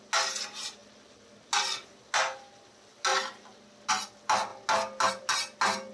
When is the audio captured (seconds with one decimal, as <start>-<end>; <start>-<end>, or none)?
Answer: 0.0-5.9